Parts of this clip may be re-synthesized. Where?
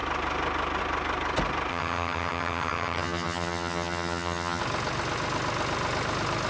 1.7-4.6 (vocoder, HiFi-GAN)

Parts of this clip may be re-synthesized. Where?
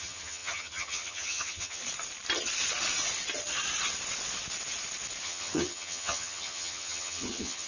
0.0-1.8 (vocoder, HiFi-GAN); 5.2-7.7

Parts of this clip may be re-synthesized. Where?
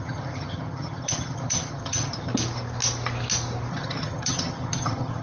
0.0-2.3 (vocoder, HiFi-GAN); 3.7-5.2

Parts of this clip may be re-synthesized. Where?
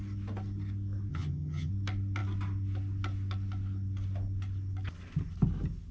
1.1-1.7 (vocoder, HiFi-GAN)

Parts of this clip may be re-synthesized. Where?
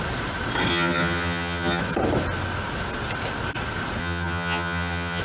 0.7-1.8 (vocoder, HiFi-GAN); 4.0-5.2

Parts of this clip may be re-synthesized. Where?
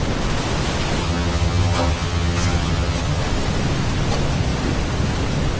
1.0-3.2 (vocoder, HiFi-GAN)